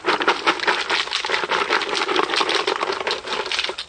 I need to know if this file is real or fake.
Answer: real